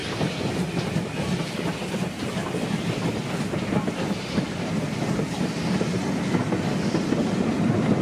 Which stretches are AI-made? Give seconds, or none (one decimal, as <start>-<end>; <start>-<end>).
none